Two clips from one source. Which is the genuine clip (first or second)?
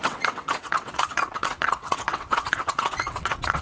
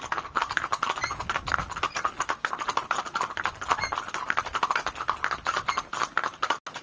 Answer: second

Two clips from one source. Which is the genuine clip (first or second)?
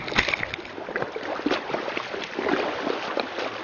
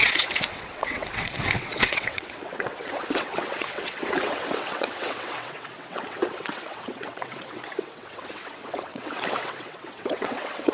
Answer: first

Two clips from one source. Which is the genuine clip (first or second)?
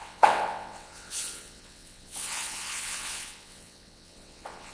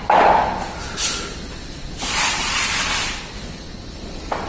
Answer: second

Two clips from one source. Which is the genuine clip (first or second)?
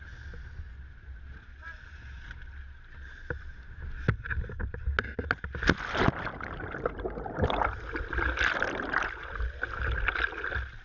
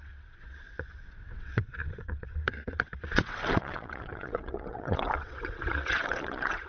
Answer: first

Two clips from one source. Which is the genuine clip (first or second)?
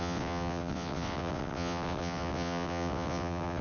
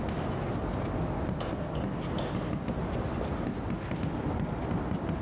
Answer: second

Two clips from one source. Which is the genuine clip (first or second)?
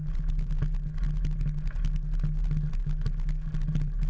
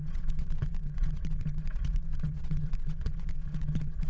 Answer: first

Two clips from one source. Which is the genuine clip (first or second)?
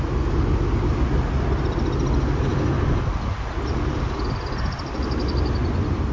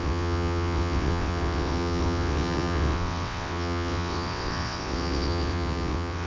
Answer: first